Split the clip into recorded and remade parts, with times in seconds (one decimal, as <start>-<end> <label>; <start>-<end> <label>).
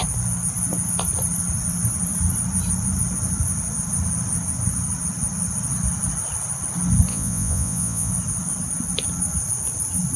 0.0-7.1 recorded; 7.1-8.1 remade; 8.1-10.2 recorded